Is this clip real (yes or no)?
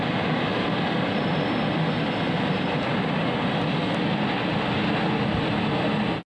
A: yes